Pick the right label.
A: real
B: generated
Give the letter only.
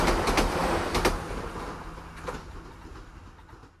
A